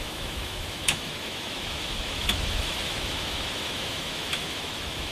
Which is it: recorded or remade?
remade